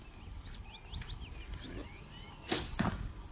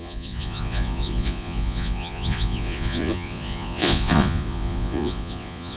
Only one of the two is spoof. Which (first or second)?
second